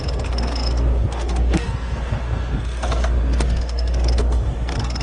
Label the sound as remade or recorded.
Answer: remade